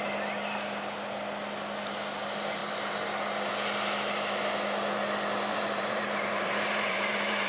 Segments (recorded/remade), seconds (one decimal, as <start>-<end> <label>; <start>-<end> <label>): 0.0-5.5 recorded; 5.5-7.5 remade